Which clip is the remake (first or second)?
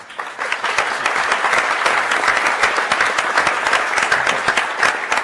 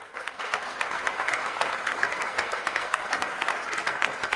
second